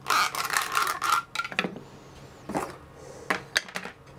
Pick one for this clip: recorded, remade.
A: recorded